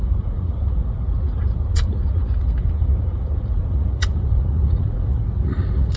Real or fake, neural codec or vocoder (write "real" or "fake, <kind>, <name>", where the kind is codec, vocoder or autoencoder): fake, vocoder, Vocos